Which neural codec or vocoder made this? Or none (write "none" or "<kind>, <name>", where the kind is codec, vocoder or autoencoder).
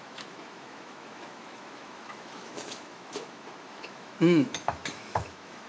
autoencoder, DAC-VAE